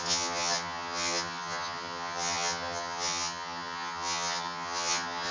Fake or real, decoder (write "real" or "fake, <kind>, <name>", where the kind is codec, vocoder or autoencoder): fake, vocoder, HiFi-GAN